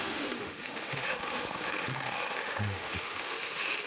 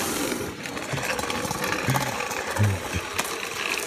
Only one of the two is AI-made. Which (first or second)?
first